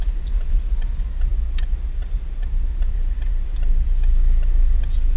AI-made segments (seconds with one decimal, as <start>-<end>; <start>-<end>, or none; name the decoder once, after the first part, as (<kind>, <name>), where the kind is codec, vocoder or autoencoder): 0.0-1.3 (vocoder, BigVGAN v2); 2.9-3.5